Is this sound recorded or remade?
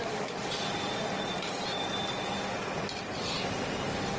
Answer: recorded